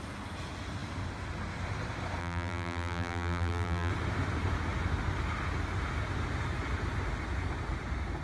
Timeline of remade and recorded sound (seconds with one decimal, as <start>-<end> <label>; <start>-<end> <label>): 0.0-2.2 recorded; 2.2-3.9 remade; 3.9-8.2 recorded